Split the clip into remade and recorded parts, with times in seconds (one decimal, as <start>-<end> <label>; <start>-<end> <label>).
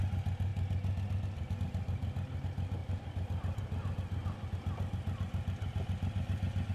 0.0-6.7 recorded